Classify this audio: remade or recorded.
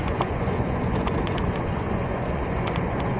remade